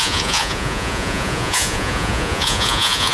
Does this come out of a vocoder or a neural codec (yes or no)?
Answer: yes